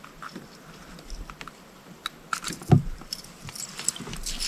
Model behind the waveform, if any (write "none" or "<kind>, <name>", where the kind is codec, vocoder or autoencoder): vocoder, BigVGAN v2